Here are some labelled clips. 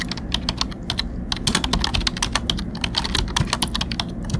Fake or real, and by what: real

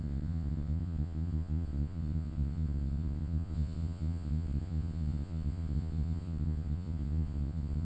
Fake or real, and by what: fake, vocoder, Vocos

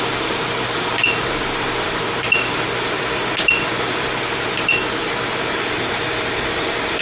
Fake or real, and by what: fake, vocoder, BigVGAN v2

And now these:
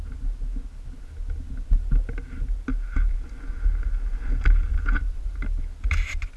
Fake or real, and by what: real